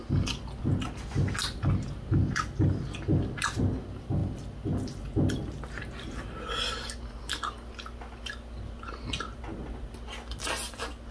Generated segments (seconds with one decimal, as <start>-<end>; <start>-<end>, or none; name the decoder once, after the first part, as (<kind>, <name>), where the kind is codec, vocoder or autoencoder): none